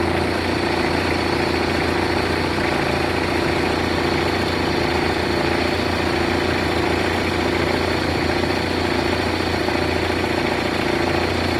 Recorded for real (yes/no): yes